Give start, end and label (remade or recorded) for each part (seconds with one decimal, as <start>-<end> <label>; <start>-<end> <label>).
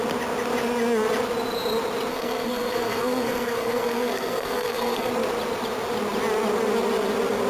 0.0-2.1 recorded; 2.1-5.1 remade; 5.1-7.5 recorded